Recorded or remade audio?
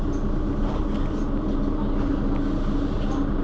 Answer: recorded